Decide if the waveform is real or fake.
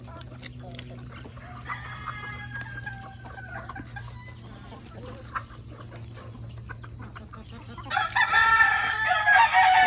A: real